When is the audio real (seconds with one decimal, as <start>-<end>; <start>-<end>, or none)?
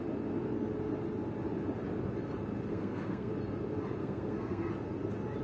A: 0.0-2.7; 3.3-4.0; 4.7-5.4